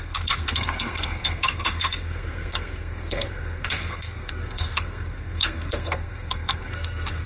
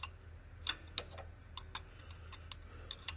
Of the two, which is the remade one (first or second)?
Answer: first